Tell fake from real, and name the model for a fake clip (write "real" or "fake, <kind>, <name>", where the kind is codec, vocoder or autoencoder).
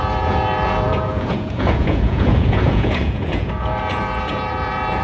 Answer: fake, vocoder, Vocos